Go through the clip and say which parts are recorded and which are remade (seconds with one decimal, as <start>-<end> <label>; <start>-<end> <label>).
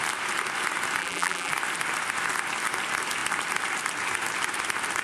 0.0-1.0 recorded; 1.0-1.5 remade; 1.5-5.0 recorded